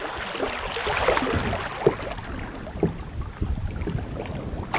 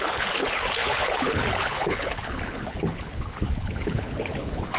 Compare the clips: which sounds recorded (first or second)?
first